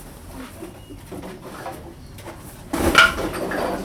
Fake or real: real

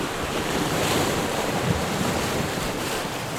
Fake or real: fake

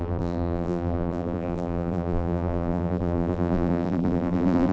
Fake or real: fake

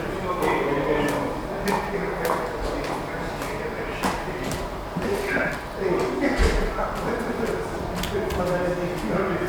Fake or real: real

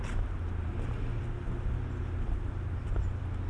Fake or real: real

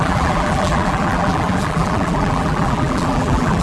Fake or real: fake